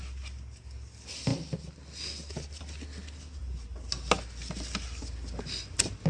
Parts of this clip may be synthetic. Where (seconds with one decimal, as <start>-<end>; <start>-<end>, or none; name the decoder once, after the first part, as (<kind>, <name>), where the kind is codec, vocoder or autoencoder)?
none